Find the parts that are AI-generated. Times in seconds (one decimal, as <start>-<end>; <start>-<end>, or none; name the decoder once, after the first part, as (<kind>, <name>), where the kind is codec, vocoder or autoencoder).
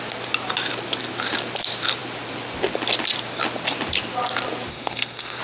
4.7-5.4 (codec, SNAC)